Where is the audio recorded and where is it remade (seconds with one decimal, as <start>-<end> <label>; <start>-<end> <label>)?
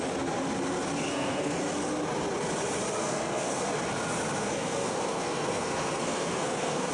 0.0-1.1 recorded; 1.1-1.6 remade; 1.6-3.0 recorded; 3.0-3.6 remade; 3.6-4.4 recorded; 4.4-6.9 remade